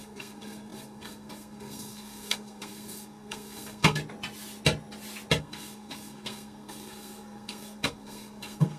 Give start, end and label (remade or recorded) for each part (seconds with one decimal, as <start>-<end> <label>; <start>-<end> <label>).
0.0-4.0 remade; 4.0-5.4 recorded; 5.4-8.8 remade